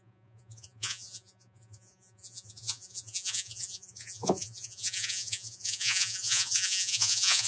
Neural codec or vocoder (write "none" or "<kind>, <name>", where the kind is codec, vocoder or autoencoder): vocoder, Vocos